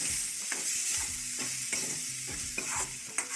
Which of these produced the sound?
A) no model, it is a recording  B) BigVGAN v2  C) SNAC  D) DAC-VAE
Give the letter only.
A